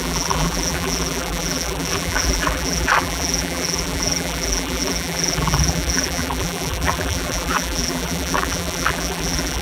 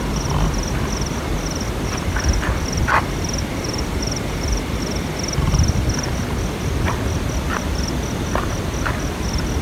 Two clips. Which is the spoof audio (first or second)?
first